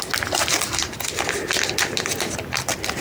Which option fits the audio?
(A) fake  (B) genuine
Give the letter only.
B